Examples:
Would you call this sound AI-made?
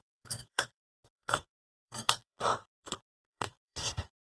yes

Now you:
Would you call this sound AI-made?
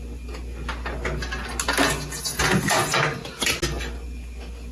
no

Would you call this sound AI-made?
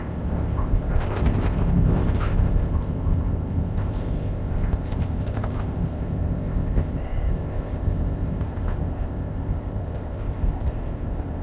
yes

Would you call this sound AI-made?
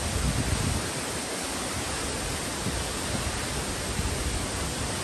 no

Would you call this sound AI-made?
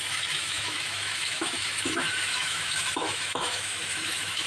yes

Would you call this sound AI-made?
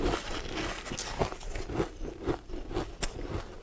no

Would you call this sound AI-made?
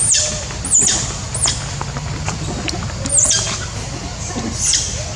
no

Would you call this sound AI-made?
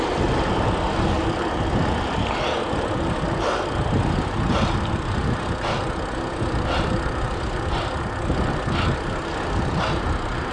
no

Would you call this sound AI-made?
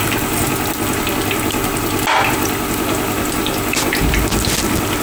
no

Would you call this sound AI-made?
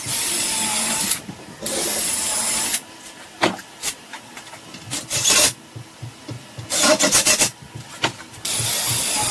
no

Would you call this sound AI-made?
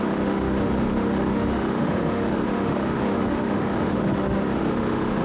yes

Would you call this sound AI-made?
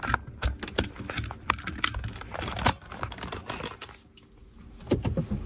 no